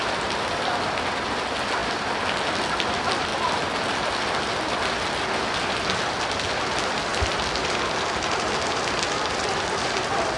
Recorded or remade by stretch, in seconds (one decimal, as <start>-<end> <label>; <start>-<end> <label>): 0.0-10.4 recorded